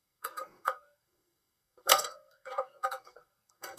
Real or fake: fake